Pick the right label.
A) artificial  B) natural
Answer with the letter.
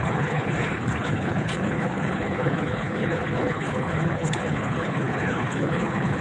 A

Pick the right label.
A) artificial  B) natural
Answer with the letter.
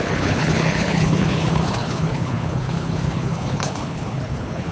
A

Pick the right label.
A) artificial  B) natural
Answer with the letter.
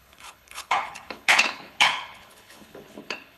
A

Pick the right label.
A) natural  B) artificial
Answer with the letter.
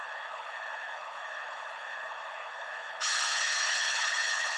B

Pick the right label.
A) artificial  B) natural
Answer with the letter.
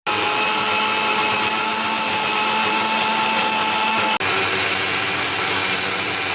B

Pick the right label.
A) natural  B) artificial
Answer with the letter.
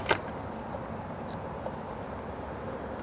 A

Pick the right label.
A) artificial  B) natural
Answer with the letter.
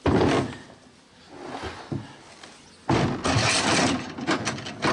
B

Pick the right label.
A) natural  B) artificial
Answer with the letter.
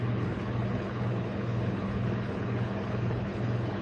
B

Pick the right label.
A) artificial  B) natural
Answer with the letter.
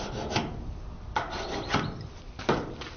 B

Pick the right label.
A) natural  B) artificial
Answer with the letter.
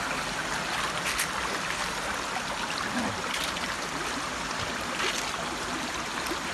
A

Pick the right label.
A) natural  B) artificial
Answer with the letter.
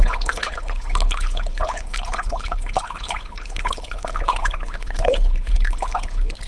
B